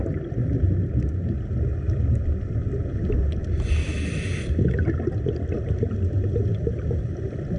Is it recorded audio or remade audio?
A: recorded